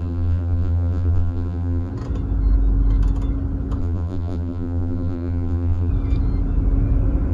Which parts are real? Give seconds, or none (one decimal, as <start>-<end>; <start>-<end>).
1.9-3.8; 5.9-7.3